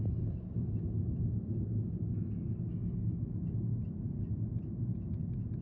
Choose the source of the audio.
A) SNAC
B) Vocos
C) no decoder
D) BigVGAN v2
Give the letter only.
C